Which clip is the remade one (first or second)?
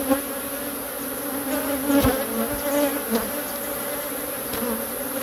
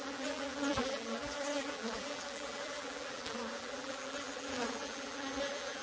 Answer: second